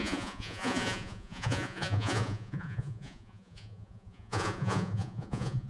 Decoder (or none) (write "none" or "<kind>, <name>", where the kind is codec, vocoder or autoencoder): vocoder, Vocos